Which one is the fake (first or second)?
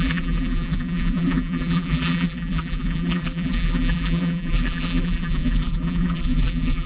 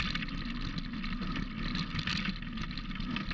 first